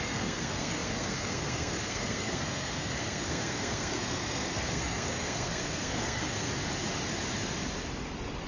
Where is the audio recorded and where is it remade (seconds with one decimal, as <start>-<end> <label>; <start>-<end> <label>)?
0.0-6.5 remade; 6.5-8.5 recorded